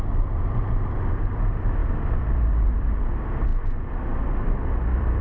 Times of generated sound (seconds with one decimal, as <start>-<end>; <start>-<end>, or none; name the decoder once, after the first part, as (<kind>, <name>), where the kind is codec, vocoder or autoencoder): none